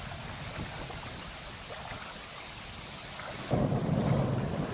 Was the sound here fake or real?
real